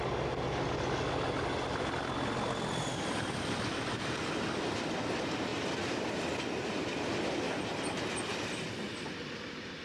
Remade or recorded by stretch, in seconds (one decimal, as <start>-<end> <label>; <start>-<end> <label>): 0.0-9.8 recorded